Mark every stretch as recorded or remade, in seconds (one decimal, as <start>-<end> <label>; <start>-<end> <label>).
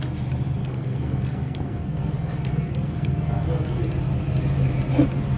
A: 0.0-0.6 recorded; 0.6-3.8 remade; 3.8-5.4 recorded